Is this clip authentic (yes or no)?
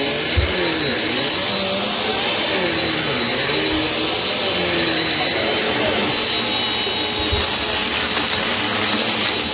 yes